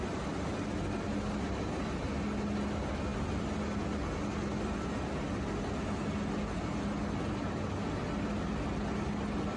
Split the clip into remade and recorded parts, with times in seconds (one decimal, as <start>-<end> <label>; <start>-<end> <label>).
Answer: 0.0-9.6 recorded